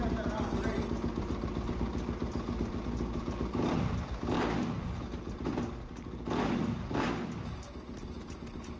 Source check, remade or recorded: recorded